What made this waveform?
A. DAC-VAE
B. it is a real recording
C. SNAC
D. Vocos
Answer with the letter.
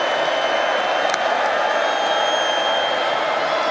B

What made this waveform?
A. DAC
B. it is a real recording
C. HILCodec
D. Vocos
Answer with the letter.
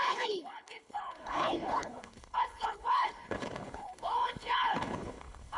C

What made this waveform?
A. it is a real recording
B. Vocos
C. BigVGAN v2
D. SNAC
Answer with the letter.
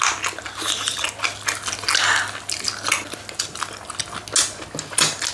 A